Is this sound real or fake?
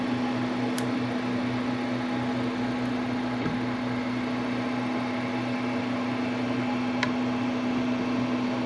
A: real